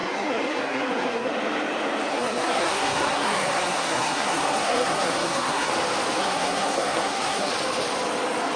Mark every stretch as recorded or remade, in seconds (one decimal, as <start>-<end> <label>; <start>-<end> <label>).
0.0-1.3 remade; 1.3-2.1 recorded; 2.1-5.7 remade; 5.7-6.2 recorded; 6.2-7.5 remade; 7.5-8.6 recorded